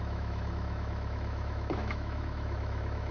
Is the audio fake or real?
fake